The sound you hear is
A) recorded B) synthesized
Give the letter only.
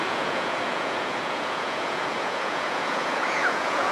B